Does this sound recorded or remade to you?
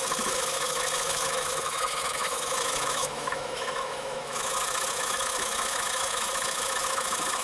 remade